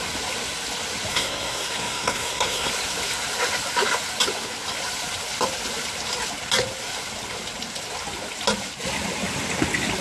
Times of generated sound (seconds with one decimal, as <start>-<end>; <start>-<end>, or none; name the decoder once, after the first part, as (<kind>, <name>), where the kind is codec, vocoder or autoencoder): 1.1-2.7 (codec, SNAC)

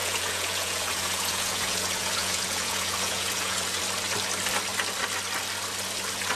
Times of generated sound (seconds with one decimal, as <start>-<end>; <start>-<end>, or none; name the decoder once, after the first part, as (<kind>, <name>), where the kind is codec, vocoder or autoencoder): 0.0-3.8 (vocoder, Vocos)

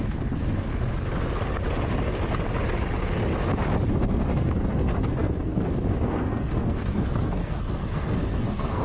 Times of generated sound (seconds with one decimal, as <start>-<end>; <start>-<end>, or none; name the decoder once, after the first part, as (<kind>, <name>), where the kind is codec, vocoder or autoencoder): 0.0-0.7 (codec, SNAC); 3.9-8.8

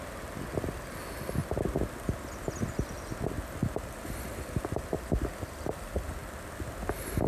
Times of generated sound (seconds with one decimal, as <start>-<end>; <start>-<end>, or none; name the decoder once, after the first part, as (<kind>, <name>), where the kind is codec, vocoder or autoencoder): 3.6-6.4 (vocoder, BigVGAN v2)

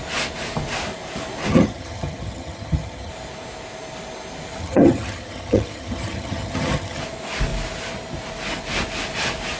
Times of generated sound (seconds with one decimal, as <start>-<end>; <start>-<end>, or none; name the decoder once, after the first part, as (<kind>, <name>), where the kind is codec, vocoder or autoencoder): 1.5-3.1 (vocoder, HiFi-GAN); 4.6-7.0

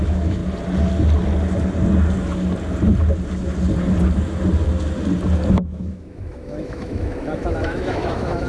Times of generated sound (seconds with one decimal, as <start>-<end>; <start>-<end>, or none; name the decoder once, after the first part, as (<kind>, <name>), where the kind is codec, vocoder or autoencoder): 0.0-0.4 (autoencoder, DAC-VAE); 5.5-8.5

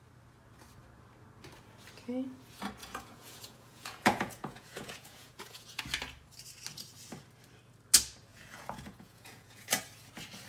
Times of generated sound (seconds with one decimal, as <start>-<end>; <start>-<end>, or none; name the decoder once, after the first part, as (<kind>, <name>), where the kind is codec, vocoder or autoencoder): 2.8-5.8 (vocoder, Vocos); 8.3-9.8

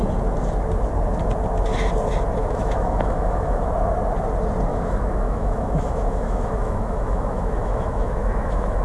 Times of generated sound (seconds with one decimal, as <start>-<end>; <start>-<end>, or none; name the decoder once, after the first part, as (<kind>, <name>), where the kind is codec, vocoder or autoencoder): 2.4-3.6 (autoencoder, DAC-VAE); 4.7-8.8